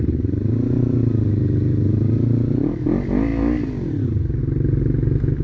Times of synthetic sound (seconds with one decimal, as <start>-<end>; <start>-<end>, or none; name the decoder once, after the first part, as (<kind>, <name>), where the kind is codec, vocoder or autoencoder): none